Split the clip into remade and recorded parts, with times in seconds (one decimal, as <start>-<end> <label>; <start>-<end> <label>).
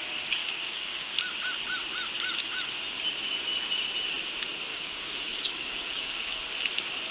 0.0-0.4 recorded; 0.4-1.1 remade; 1.1-4.7 recorded; 4.7-6.4 remade; 6.4-7.1 recorded